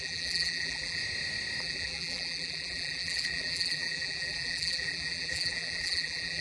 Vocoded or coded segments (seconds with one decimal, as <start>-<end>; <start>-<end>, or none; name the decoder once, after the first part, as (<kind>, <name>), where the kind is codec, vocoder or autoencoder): 0.0-1.0 (vocoder, BigVGAN v2); 1.6-6.4